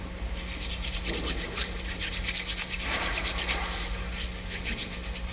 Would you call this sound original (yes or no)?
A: yes